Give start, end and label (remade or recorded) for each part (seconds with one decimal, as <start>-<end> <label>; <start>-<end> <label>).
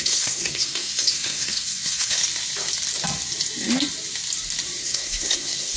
0.0-2.2 remade; 2.2-4.8 recorded; 4.8-5.8 remade